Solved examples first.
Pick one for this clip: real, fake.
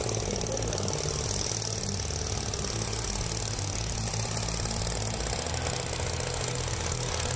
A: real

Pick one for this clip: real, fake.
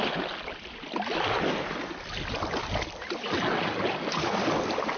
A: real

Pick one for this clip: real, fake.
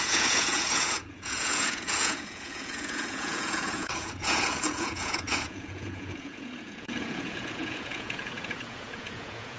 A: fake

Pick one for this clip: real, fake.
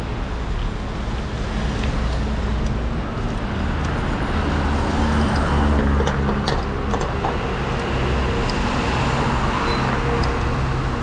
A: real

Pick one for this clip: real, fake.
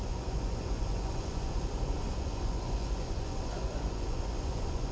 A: fake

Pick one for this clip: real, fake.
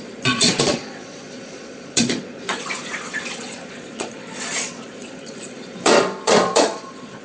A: fake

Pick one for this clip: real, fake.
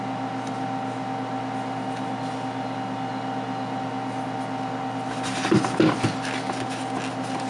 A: real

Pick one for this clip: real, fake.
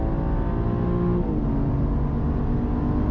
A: real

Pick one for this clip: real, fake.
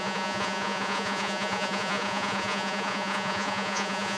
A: fake